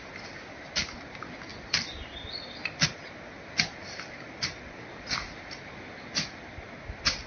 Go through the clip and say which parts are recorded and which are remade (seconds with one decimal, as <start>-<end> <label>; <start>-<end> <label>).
0.0-7.3 recorded